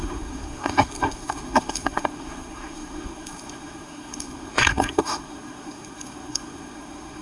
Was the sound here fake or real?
fake